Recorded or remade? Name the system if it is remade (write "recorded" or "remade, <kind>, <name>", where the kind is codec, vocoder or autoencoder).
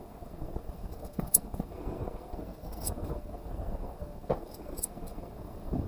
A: remade, codec, SNAC